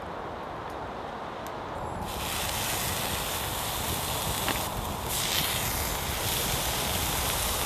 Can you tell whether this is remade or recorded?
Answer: recorded